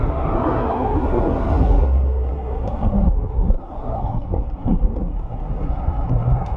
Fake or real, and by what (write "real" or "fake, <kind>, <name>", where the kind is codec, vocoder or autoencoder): fake, codec, SNAC